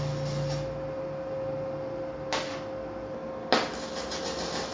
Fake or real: real